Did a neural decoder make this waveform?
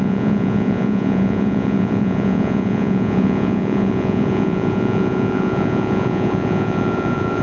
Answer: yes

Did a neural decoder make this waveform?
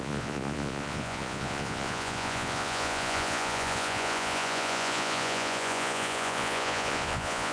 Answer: yes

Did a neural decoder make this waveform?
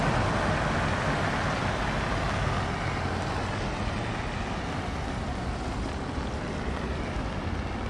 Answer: no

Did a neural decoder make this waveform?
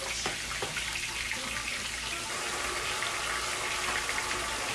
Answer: no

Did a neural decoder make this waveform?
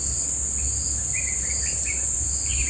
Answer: no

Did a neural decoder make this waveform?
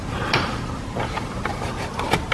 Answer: no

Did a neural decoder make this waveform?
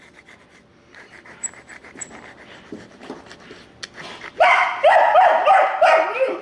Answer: no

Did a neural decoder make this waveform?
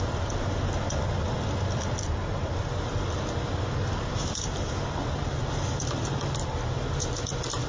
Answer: yes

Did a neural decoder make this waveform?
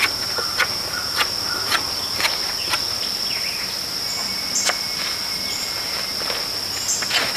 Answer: no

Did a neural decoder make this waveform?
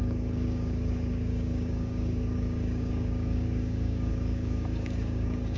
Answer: yes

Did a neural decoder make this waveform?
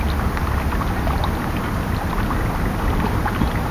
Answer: no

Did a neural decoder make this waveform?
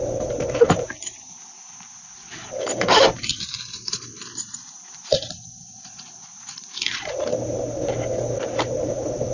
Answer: yes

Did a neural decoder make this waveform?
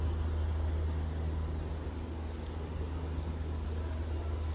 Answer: no